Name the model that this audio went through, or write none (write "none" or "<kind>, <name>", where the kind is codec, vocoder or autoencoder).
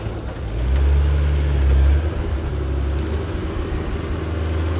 none